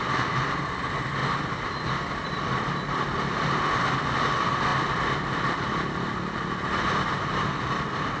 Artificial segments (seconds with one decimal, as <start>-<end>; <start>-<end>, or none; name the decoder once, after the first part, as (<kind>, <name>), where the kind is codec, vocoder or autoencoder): none